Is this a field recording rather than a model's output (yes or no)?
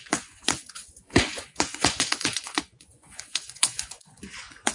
no